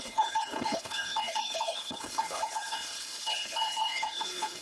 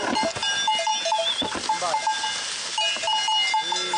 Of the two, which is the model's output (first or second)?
first